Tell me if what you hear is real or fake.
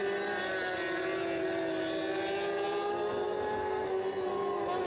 real